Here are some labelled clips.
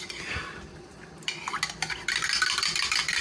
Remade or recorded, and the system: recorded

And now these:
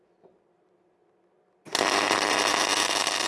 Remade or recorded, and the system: recorded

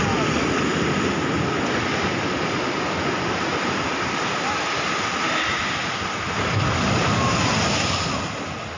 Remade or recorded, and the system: recorded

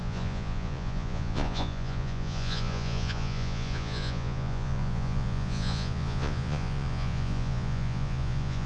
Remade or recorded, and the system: remade, vocoder, Vocos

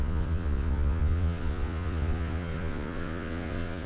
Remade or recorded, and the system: remade, vocoder, Vocos